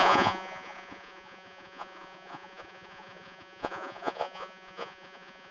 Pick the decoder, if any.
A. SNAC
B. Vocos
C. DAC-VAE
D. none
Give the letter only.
B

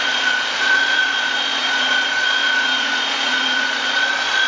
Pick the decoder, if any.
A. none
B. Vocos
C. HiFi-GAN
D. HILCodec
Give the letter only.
B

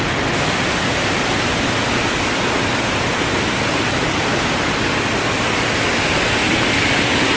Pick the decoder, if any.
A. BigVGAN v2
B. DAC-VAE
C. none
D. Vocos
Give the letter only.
C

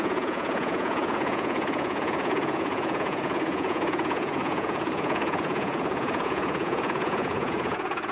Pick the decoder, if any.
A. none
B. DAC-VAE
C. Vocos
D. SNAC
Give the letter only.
C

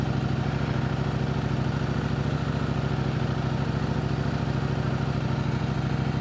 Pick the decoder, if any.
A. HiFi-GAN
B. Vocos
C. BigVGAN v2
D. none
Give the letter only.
D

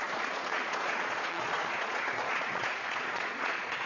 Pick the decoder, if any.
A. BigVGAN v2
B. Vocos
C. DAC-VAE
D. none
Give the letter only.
B